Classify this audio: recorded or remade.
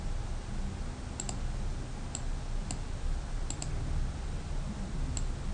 recorded